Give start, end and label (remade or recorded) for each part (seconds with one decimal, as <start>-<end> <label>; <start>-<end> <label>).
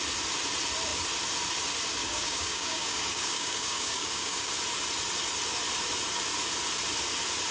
0.0-2.0 recorded; 2.0-4.5 remade; 4.5-7.5 recorded